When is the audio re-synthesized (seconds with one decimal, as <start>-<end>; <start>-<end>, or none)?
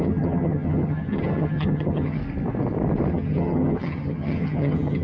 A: 0.0-2.2; 3.1-5.0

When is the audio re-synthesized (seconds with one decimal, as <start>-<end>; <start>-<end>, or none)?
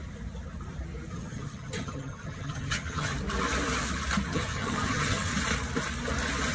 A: 1.1-3.1; 4.3-5.3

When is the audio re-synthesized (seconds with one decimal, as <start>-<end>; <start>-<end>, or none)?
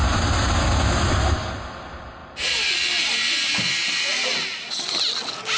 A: none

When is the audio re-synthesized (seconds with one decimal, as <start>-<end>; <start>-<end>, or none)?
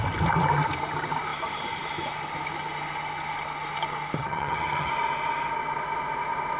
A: 4.2-4.9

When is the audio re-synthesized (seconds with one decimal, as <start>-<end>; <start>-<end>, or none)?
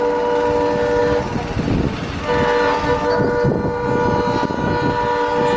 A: none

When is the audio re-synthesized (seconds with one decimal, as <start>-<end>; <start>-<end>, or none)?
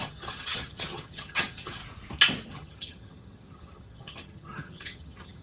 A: 0.0-1.8; 2.5-5.4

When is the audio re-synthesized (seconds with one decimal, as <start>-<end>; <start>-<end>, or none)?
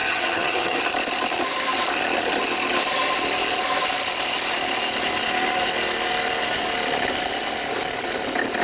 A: 0.0-0.8